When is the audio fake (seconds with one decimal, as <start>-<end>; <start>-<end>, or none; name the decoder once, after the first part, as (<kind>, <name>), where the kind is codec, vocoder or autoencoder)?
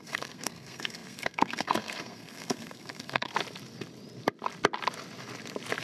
0.0-3.3 (codec, SNAC)